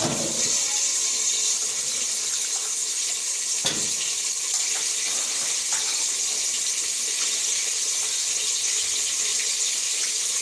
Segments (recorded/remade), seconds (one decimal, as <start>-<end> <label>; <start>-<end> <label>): 0.0-10.4 recorded